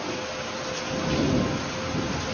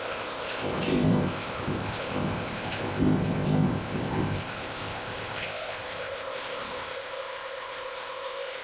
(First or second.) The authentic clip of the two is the first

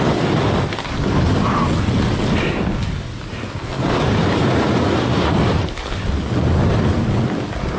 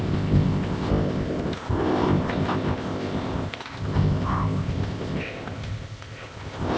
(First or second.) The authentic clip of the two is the first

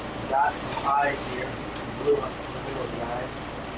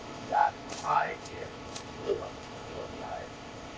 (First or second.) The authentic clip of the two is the first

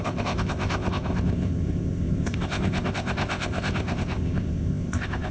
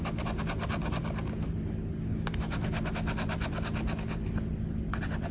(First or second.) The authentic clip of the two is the second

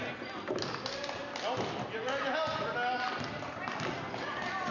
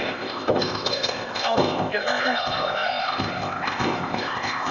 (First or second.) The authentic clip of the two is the first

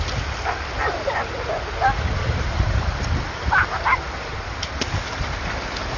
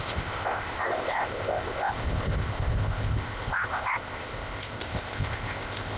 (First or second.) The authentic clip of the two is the first